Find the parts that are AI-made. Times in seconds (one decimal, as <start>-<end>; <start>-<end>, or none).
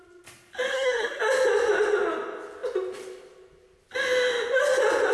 0.7-1.2